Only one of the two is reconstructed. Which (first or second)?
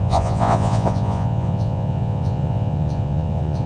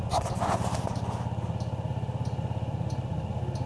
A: first